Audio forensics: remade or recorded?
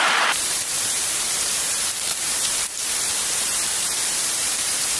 remade